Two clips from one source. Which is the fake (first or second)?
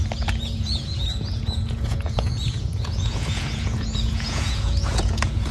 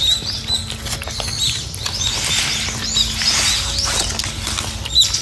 first